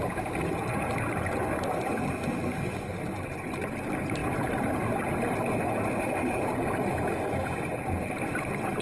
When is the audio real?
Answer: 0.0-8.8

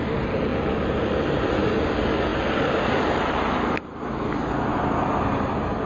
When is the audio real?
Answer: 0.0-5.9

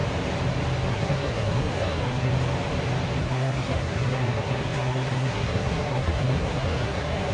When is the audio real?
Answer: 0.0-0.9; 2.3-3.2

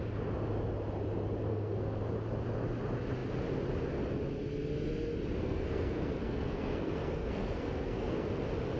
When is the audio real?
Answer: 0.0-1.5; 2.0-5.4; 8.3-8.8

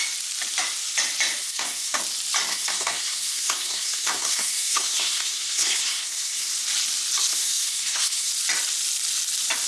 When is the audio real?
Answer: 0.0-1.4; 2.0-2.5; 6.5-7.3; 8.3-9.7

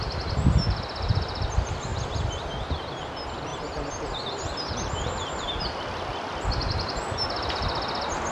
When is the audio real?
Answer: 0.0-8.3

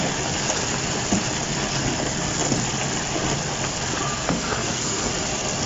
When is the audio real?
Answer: 0.0-4.2; 5.1-5.7

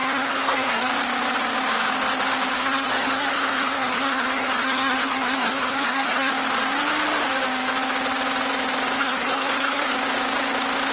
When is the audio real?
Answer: 0.9-2.5; 6.3-9.0; 9.9-10.9